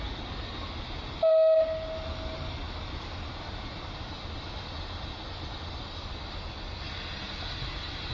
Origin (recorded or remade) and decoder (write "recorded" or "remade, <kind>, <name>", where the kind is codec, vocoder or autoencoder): recorded